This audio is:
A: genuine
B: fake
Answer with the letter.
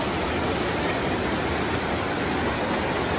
A